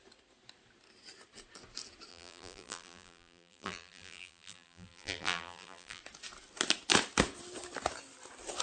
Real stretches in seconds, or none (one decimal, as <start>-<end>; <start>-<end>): 0.0-2.1; 6.0-8.6